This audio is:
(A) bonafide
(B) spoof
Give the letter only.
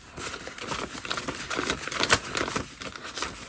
A